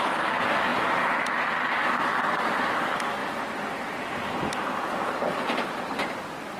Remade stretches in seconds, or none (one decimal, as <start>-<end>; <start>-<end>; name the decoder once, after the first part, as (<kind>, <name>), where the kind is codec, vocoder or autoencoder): 3.2-6.6 (vocoder, BigVGAN v2)